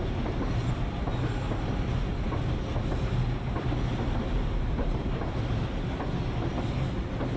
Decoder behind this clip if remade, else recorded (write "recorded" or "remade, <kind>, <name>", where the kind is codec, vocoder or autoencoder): recorded